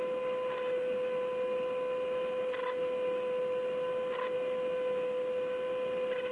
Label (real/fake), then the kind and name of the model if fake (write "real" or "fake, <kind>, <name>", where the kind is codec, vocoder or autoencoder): real